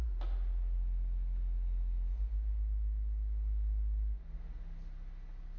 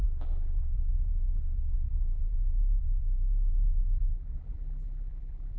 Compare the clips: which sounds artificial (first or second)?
second